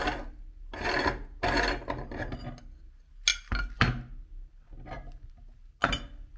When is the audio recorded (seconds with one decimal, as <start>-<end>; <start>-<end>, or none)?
0.0-6.4